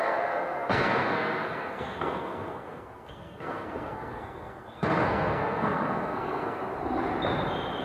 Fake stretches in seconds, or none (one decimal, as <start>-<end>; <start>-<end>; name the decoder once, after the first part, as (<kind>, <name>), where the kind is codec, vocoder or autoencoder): 0.0-6.6 (codec, SNAC)

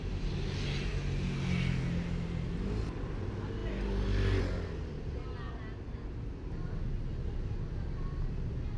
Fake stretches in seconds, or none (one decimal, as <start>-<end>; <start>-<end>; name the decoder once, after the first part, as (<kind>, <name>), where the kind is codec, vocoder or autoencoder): none

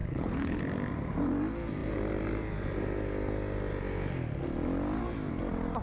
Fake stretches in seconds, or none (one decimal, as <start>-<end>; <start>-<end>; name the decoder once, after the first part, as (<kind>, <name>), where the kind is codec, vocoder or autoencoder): 0.0-0.6 (codec, HILCodec)

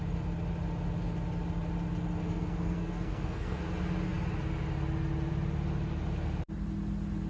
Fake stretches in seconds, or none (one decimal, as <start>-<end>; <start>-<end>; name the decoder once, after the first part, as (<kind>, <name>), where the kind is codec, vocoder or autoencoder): 2.2-3.6 (codec, SNAC)

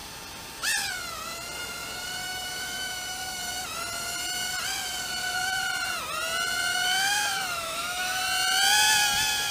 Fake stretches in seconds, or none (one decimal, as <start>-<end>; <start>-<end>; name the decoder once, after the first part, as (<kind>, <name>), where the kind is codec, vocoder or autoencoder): 2.2-3.4 (autoencoder, DAC-VAE); 6.7-8.2

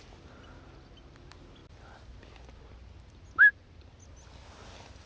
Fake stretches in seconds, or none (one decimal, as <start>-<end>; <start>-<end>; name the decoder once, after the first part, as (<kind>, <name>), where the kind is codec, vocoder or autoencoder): none

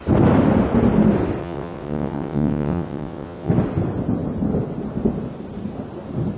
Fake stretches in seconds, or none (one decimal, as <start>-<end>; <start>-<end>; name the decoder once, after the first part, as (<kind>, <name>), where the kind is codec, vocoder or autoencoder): 1.4-3.5 (vocoder, WaveNeXt)